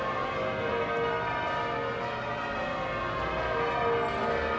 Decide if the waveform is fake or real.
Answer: real